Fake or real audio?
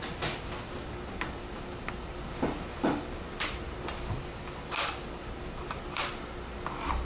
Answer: real